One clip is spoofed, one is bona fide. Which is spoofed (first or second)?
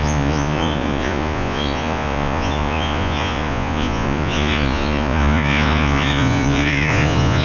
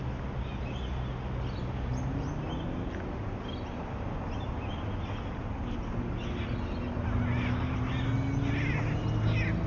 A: first